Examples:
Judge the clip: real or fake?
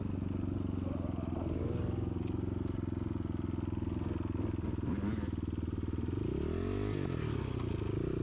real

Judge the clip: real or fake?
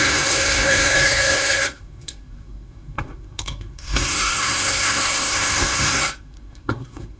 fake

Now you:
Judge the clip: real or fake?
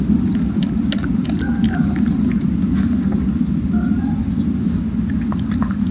real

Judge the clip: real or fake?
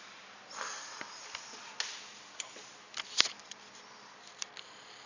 real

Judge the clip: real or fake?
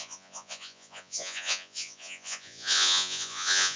fake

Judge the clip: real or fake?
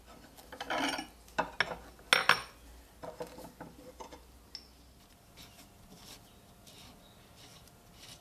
real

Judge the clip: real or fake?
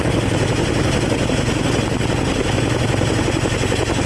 fake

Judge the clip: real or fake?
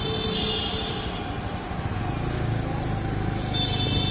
real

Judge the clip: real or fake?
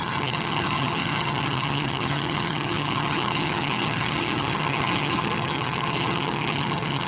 fake